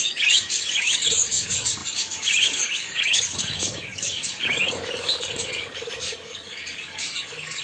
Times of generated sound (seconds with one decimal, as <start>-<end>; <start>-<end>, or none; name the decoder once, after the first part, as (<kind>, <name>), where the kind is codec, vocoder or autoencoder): 0.0-7.6 (codec, DAC)